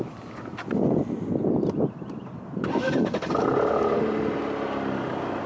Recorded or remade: recorded